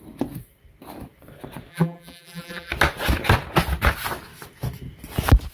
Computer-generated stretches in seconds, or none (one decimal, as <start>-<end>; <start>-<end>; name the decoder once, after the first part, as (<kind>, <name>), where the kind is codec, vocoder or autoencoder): 1.7-2.7 (vocoder, BigVGAN v2)